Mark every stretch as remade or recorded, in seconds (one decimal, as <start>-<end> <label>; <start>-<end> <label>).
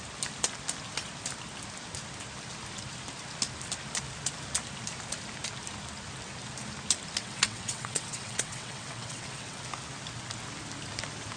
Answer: 0.0-7.2 recorded; 7.2-9.6 remade; 9.6-11.4 recorded